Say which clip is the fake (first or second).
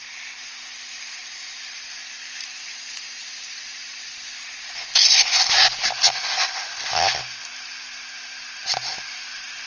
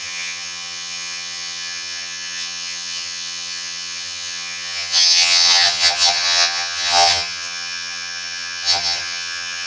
second